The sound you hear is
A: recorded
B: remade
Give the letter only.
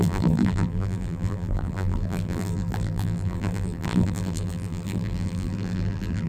B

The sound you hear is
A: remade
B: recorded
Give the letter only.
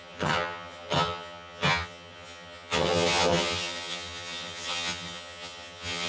A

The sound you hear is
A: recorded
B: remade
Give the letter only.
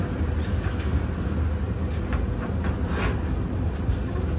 A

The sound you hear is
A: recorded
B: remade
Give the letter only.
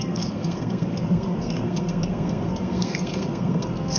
B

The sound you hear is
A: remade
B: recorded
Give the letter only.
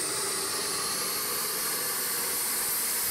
B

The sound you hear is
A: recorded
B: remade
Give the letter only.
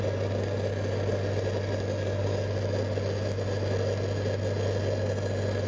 A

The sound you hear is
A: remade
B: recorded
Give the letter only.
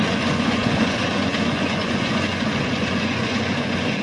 A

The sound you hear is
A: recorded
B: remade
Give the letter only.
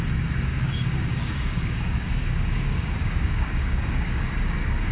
B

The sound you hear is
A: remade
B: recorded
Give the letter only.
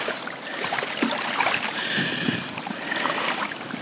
B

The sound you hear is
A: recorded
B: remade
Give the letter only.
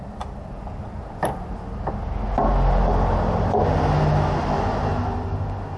A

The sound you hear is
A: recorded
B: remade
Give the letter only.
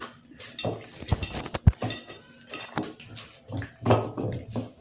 A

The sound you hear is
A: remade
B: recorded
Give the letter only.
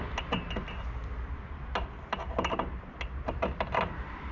B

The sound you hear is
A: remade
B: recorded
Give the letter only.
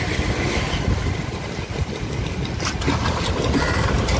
B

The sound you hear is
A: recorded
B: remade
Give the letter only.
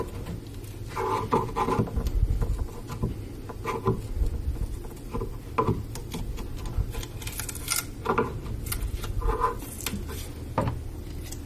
A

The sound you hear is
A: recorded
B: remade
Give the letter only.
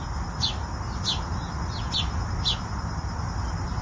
A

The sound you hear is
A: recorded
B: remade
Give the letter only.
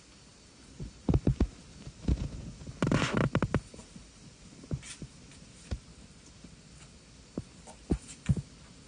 A